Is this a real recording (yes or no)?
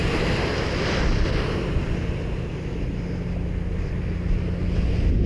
yes